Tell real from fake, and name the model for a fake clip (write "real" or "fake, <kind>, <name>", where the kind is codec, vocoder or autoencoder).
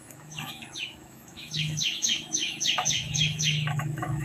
fake, autoencoder, DAC-VAE